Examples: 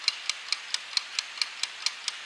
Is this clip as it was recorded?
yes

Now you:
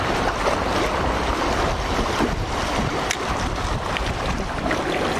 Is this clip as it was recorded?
yes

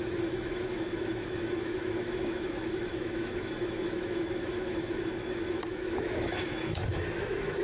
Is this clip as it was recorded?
no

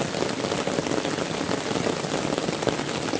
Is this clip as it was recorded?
yes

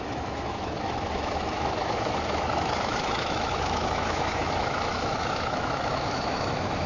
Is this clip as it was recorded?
no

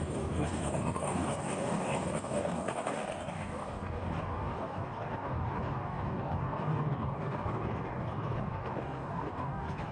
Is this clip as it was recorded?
no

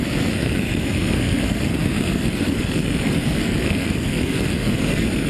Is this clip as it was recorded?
no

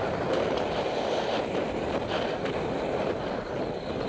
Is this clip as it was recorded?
no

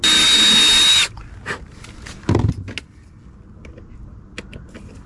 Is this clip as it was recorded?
yes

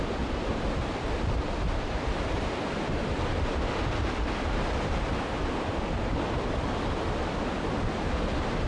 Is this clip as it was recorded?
yes